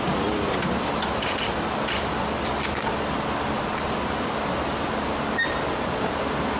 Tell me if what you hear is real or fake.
real